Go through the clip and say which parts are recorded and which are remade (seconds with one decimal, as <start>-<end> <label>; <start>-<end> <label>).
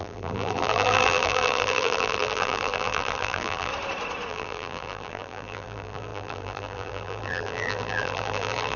0.0-3.7 remade; 3.7-4.3 recorded; 4.3-8.8 remade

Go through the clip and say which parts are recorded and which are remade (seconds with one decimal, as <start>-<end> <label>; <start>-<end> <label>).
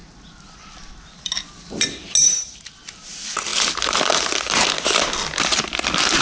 0.0-6.2 recorded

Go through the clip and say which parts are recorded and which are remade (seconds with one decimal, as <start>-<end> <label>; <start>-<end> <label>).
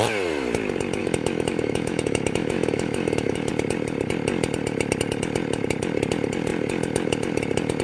0.0-1.0 recorded; 1.0-3.5 remade; 3.5-7.8 recorded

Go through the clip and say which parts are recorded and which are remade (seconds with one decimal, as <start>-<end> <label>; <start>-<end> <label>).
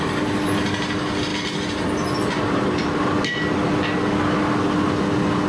0.0-5.5 recorded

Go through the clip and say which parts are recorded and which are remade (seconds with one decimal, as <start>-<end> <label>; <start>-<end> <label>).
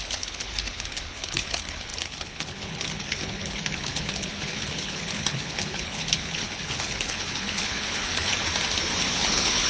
0.0-8.3 remade; 8.3-9.1 recorded; 9.1-9.7 remade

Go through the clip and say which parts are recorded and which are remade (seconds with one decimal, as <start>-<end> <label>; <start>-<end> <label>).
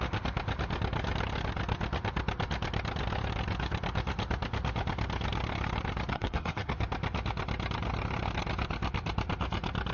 0.0-6.1 recorded; 6.1-6.7 remade; 6.7-9.9 recorded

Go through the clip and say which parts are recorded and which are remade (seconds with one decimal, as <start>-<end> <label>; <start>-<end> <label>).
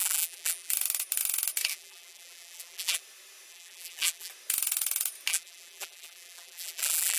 0.0-0.7 remade; 0.7-1.7 recorded; 1.7-3.0 remade; 3.0-3.5 recorded; 3.5-4.3 remade; 4.3-5.3 recorded; 5.3-7.2 remade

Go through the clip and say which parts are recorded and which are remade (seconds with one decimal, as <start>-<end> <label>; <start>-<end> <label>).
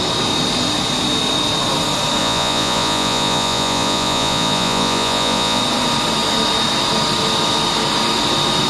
0.0-2.2 recorded; 2.2-5.6 remade; 5.6-8.7 recorded